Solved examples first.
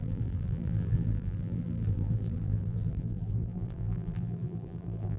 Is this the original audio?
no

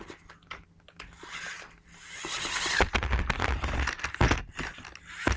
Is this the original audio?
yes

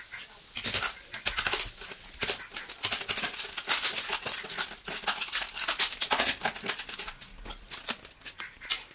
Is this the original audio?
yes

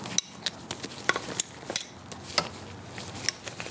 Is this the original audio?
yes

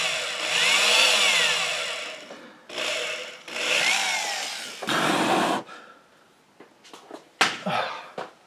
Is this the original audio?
yes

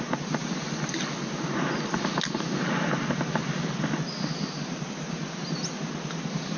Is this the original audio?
yes